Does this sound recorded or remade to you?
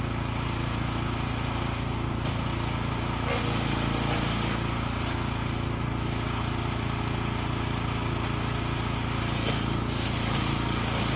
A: recorded